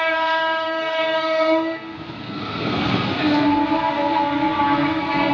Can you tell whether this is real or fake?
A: fake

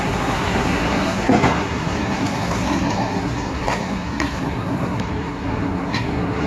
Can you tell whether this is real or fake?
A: fake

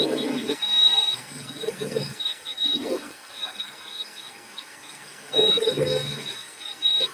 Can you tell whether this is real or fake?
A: fake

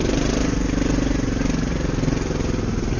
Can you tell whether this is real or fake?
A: real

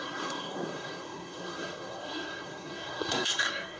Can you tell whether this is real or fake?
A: fake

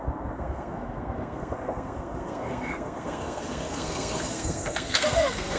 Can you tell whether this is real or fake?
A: fake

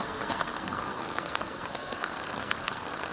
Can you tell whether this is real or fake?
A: fake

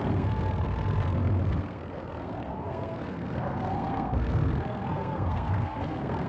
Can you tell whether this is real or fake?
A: fake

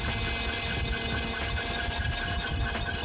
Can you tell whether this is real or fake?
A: real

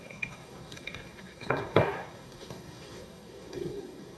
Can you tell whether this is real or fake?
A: fake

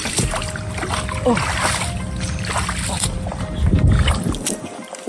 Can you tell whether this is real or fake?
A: real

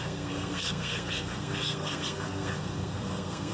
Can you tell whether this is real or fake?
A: fake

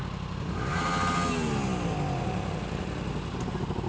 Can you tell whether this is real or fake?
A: real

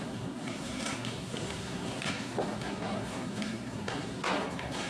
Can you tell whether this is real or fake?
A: fake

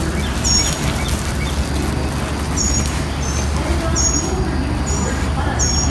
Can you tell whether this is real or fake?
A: real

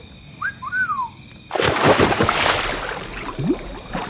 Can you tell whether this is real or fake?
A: real